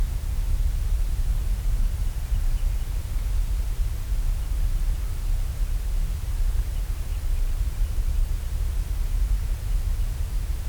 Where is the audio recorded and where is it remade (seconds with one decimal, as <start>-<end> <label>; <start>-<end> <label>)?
0.0-7.1 recorded; 7.1-8.4 remade; 8.4-10.7 recorded